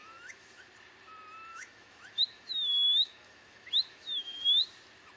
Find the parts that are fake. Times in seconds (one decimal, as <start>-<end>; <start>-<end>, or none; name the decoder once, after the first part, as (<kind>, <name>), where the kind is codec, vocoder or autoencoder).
0.0-0.7 (autoencoder, DAC-VAE); 1.5-4.6